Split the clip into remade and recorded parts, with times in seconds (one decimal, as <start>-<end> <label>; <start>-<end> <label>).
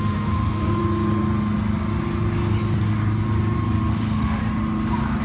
0.0-0.8 remade; 0.8-3.9 recorded; 3.9-4.4 remade; 4.4-5.2 recorded